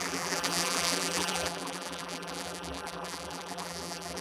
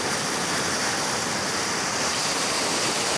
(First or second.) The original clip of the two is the second